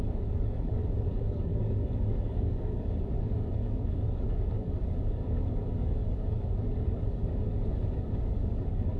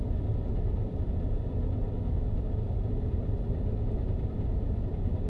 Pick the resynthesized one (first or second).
first